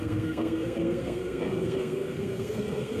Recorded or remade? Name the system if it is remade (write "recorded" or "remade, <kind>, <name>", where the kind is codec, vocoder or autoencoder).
remade, codec, SNAC